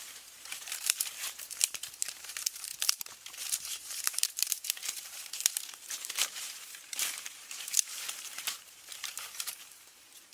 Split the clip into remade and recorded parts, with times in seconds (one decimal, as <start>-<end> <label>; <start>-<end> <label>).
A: 0.0-2.7 remade; 2.7-3.4 recorded; 3.4-10.3 remade